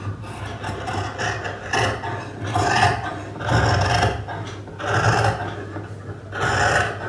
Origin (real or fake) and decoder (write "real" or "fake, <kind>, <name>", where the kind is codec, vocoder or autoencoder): real